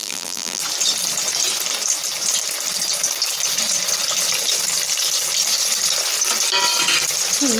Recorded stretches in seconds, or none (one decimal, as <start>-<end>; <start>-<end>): 0.6-7.6